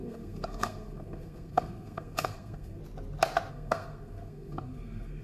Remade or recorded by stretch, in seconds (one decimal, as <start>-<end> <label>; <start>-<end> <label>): 0.0-2.8 remade; 2.8-3.5 recorded; 3.5-5.2 remade